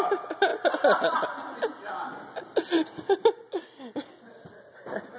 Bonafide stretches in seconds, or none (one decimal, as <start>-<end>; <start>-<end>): 0.0-5.2